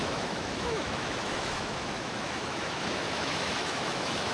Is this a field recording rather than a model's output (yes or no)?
no